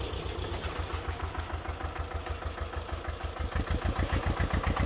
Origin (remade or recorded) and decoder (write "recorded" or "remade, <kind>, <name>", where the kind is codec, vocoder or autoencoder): recorded